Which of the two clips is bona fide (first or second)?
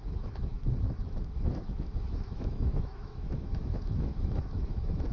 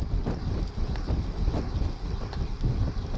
second